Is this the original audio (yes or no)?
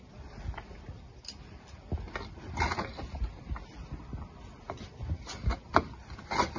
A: yes